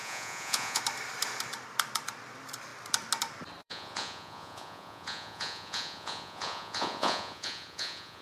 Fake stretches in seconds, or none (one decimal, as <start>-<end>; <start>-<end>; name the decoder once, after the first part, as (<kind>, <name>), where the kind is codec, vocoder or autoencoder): 0.0-0.8 (vocoder, Vocos); 3.6-8.2